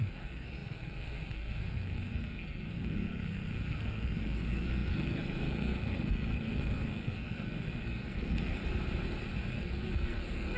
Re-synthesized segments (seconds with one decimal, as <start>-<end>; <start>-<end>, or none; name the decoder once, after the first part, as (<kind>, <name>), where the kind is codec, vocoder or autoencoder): 0.0-8.6 (codec, SNAC); 9.5-10.6